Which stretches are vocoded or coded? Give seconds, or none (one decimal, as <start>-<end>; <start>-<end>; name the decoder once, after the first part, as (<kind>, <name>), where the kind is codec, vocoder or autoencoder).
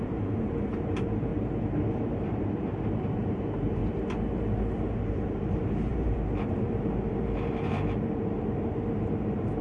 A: 0.0-1.3 (vocoder, BigVGAN v2); 2.2-3.8; 4.7-9.6